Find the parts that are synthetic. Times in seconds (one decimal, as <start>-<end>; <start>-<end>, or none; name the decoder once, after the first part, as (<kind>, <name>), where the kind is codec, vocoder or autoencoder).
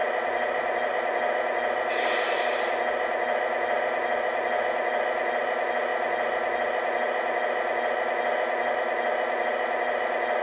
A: none